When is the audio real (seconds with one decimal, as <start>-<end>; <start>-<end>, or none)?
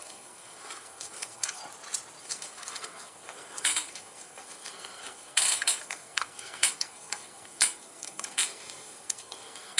1.6-2.2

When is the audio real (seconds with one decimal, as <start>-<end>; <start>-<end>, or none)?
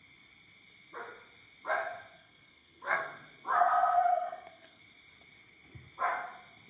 0.0-2.2; 3.0-3.6; 4.8-6.7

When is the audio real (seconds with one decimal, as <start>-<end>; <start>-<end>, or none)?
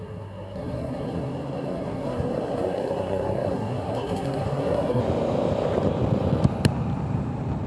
5.0-7.7